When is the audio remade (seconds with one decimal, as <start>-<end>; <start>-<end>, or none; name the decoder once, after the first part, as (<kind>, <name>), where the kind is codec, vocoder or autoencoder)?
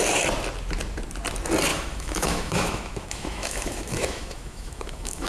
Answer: 1.7-5.3 (autoencoder, DAC-VAE)